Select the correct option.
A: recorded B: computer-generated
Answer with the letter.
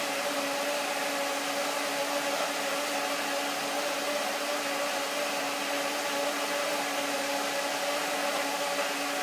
A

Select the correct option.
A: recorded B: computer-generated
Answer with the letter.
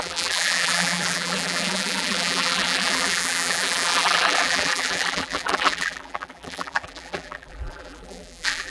B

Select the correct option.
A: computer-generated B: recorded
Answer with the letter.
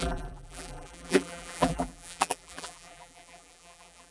A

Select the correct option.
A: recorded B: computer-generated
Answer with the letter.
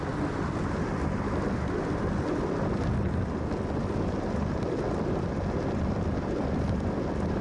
A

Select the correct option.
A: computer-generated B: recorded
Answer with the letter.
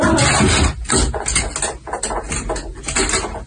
B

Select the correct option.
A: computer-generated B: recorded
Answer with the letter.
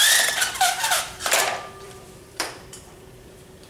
A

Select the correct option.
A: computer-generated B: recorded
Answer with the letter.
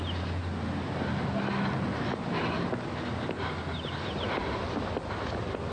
B